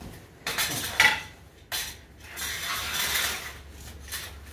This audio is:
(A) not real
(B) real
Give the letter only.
B